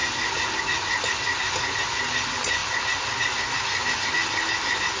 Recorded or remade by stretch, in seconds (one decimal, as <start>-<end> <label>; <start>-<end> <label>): 0.0-5.0 recorded